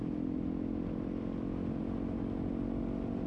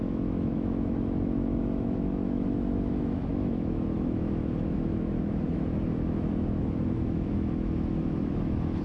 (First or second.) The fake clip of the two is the second